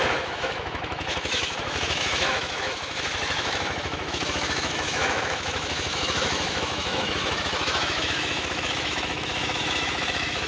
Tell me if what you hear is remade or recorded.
remade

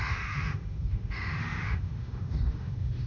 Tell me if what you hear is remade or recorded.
remade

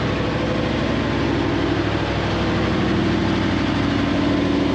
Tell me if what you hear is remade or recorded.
recorded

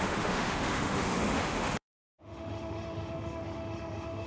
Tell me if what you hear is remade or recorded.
remade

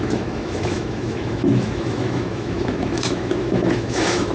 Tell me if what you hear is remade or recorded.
remade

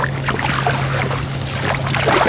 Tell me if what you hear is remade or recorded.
recorded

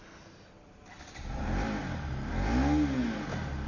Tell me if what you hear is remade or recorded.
recorded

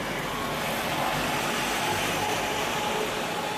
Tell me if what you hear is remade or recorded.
recorded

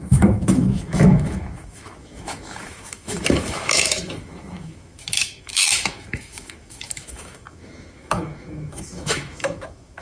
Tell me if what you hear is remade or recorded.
remade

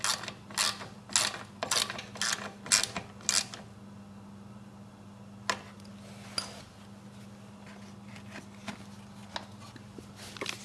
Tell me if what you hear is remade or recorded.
recorded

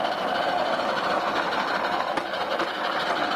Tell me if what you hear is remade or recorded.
recorded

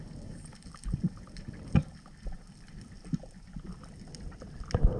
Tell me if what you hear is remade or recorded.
recorded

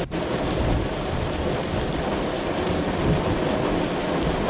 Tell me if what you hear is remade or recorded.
recorded